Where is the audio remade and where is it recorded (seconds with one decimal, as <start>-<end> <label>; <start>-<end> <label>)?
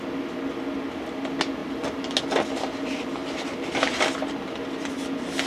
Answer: 0.0-5.5 recorded